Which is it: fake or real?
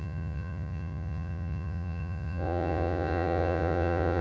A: fake